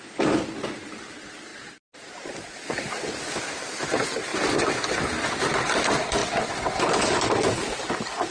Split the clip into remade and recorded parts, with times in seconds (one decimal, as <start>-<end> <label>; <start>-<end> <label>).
0.0-8.3 recorded